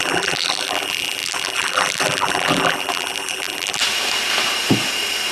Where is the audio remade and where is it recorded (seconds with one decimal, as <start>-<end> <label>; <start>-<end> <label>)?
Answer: 0.0-3.8 remade; 3.8-5.3 recorded